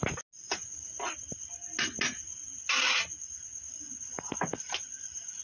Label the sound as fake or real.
real